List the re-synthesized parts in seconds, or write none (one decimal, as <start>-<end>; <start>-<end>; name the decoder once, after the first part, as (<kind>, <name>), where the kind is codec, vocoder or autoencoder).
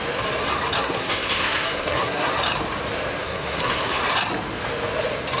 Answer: 0.8-2.3 (codec, SNAC); 3.2-4.0